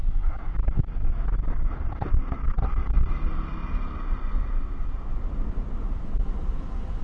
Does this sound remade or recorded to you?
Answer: recorded